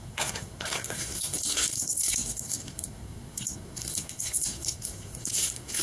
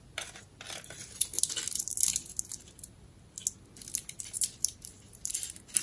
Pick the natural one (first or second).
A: second